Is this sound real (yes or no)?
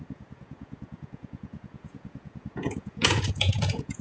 no